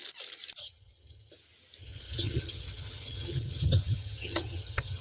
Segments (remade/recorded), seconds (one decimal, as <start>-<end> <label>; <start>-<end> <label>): 0.0-0.6 recorded; 0.6-1.3 remade; 1.3-1.8 recorded; 1.8-5.0 remade